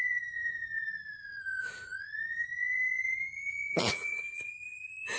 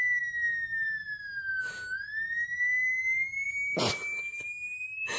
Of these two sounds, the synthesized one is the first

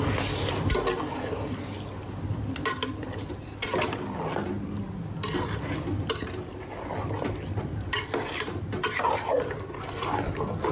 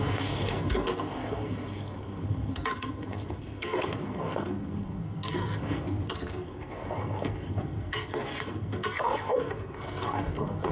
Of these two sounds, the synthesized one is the second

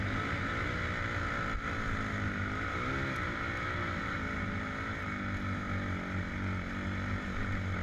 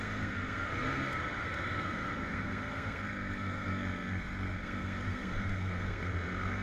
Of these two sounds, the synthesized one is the second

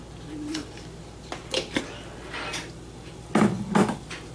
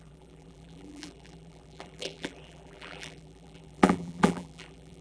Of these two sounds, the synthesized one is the second